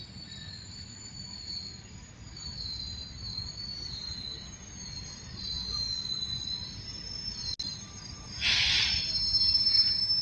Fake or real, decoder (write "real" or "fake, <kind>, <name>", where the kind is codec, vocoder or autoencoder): real